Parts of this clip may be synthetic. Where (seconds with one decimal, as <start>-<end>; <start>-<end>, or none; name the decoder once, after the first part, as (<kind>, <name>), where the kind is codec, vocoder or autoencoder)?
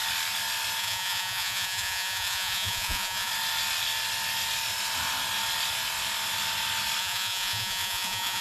0.8-3.3 (vocoder, Vocos); 7.0-8.4